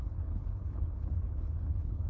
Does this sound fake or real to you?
fake